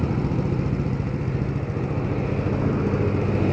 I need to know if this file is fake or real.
real